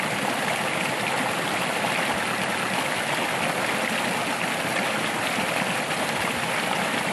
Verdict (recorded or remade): recorded